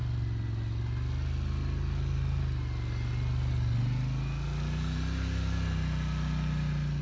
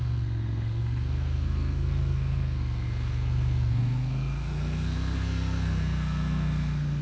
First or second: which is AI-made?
second